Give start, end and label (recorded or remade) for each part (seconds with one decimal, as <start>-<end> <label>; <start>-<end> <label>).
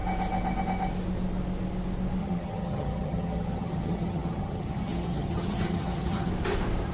0.0-2.2 recorded; 2.2-6.3 remade; 6.3-6.9 recorded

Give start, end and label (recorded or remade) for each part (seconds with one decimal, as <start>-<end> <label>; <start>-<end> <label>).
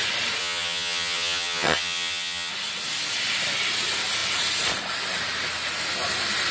0.0-0.4 recorded; 0.4-2.5 remade; 2.5-6.5 recorded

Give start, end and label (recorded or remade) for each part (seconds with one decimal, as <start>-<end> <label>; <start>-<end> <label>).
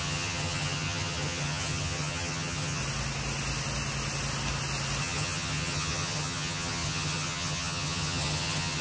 0.0-2.8 remade; 2.8-5.0 recorded; 5.0-8.8 remade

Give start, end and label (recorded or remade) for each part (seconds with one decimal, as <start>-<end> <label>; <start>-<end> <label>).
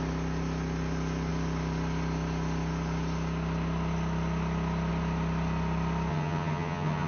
0.0-6.1 recorded; 6.1-7.1 remade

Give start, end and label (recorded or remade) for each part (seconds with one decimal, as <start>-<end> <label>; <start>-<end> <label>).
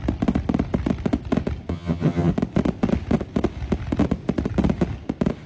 0.0-1.7 recorded; 1.7-2.3 remade; 2.3-5.5 recorded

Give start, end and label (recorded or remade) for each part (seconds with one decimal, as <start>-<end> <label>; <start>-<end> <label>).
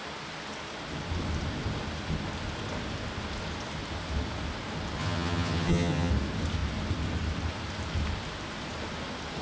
0.0-5.0 recorded; 5.0-6.1 remade; 6.1-9.4 recorded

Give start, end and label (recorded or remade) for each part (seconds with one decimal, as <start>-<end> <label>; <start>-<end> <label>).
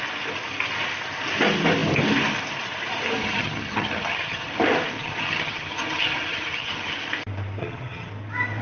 0.0-3.2 recorded; 3.2-4.5 remade; 4.5-5.0 recorded; 5.0-6.9 remade; 6.9-7.6 recorded; 7.6-8.1 remade; 8.1-8.6 recorded